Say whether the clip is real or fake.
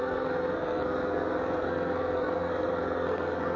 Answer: fake